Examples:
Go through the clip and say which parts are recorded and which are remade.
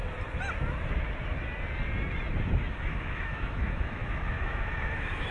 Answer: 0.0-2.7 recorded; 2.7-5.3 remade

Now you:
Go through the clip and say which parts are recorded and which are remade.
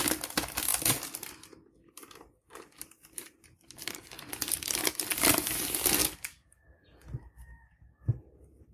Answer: 0.0-6.0 recorded; 6.0-6.6 remade; 6.6-8.7 recorded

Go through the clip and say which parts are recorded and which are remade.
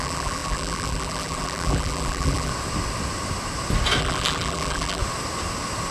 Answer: 0.0-2.5 remade; 2.5-4.0 recorded; 4.0-5.0 remade; 5.0-5.9 recorded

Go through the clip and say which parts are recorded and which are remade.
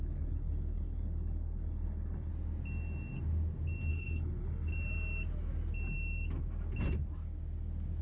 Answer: 0.0-2.3 remade; 2.3-3.9 recorded; 3.9-4.7 remade; 4.7-8.0 recorded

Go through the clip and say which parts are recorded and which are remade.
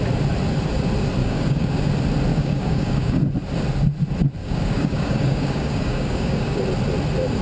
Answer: 0.0-1.2 recorded; 1.2-1.9 remade; 1.9-2.3 recorded; 2.3-3.2 remade; 3.2-4.4 recorded; 4.4-6.6 remade; 6.6-7.4 recorded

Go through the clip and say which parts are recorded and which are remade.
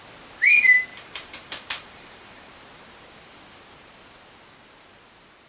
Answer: 0.0-0.9 recorded; 0.9-2.5 remade; 2.5-5.5 recorded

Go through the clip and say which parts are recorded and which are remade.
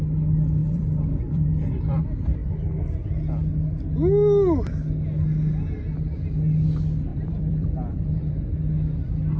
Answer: 0.0-0.6 recorded; 0.6-2.0 remade; 2.0-7.1 recorded; 7.1-8.3 remade; 8.3-9.4 recorded